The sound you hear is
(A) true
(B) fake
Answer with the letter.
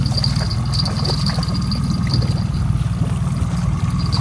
A